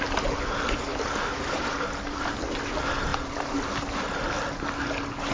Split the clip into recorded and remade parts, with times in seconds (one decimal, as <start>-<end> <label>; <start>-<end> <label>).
0.0-0.9 recorded; 0.9-2.4 remade; 2.4-3.1 recorded; 3.1-3.6 remade; 3.6-5.3 recorded